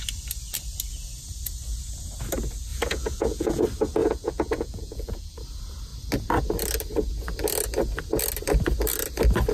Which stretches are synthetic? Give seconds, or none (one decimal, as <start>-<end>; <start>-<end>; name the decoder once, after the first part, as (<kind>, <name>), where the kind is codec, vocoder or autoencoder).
2.7-3.6 (vocoder, Vocos); 4.0-5.4